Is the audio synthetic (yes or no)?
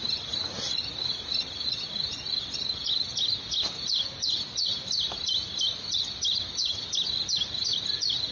no